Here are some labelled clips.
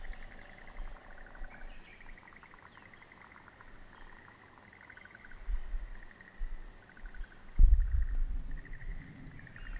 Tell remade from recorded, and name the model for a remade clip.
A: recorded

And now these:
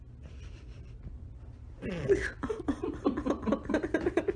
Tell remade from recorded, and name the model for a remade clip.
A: remade, vocoder, BigVGAN v2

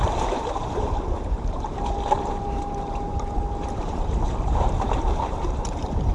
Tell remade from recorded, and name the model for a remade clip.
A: remade, vocoder, BigVGAN v2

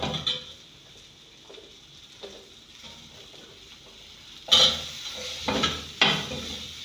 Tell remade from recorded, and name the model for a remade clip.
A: recorded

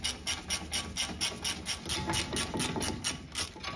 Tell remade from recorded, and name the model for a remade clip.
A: recorded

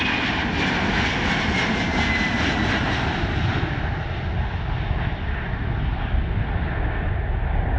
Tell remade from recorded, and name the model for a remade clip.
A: recorded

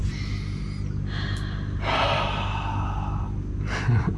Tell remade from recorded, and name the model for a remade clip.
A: recorded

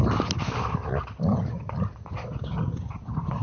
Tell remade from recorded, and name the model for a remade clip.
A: remade, vocoder, BigVGAN v2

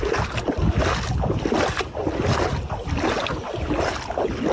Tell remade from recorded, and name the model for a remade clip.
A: recorded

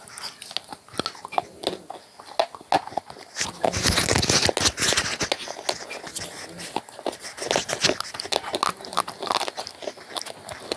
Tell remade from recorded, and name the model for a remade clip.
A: recorded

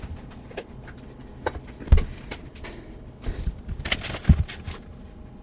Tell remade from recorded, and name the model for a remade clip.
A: recorded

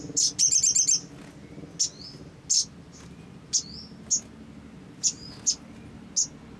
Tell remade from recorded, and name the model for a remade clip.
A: recorded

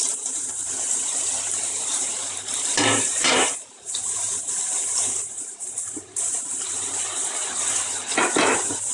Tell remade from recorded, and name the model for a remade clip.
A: remade, vocoder, BigVGAN v2